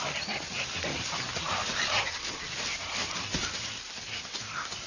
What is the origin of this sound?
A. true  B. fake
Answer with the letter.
B